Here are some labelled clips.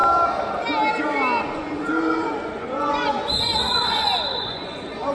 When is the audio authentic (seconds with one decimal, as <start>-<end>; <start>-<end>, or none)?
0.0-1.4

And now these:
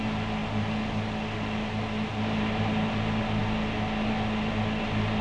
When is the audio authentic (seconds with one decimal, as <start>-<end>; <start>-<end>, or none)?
0.0-5.2

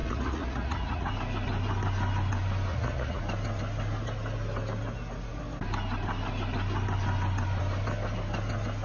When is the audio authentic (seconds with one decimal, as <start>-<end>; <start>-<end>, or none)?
1.1-2.7; 3.2-8.8

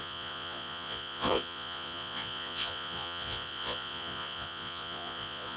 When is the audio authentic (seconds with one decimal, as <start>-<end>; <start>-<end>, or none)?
none

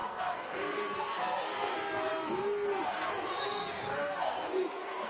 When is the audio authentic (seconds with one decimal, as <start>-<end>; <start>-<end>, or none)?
none